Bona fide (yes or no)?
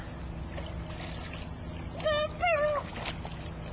yes